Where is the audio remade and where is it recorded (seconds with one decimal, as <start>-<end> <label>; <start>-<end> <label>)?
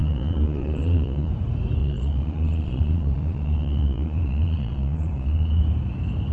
0.0-1.3 remade; 1.3-1.8 recorded; 1.8-5.6 remade; 5.6-6.3 recorded